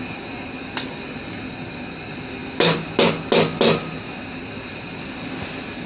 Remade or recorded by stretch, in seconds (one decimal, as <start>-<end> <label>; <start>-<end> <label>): 0.0-5.9 recorded

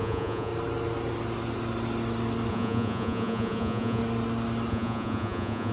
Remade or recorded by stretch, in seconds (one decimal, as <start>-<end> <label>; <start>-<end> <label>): 0.0-0.5 remade; 0.5-2.5 recorded; 2.5-4.0 remade; 4.0-4.7 recorded; 4.7-5.7 remade